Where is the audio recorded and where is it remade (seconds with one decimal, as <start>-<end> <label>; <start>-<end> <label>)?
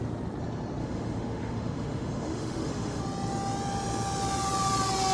0.0-0.8 recorded; 0.8-3.0 remade; 3.0-5.1 recorded